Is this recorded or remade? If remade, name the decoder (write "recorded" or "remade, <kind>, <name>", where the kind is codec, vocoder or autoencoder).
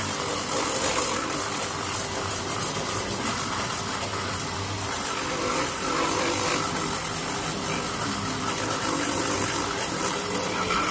recorded